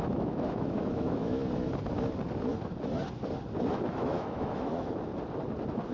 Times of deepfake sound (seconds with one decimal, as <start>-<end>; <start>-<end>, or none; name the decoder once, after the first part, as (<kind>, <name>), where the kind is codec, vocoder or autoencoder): 0.0-1.4 (autoencoder, DAC-VAE); 3.7-5.1

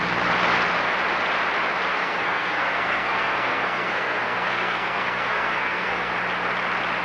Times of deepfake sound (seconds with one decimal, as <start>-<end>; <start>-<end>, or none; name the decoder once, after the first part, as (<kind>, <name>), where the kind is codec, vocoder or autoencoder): 1.9-6.1 (codec, SNAC)

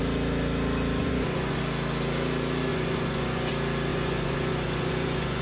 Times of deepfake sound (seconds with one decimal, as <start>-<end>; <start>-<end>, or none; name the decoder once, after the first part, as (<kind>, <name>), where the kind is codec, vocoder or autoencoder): 1.0-1.6 (vocoder, Vocos); 2.7-3.5; 3.9-5.4

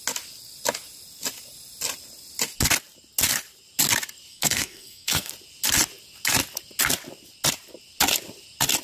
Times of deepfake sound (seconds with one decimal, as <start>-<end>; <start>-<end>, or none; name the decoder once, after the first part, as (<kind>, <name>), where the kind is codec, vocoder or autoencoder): 4.3-5.3 (codec, SNAC)